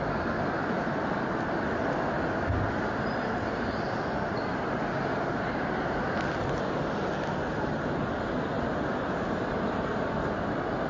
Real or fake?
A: real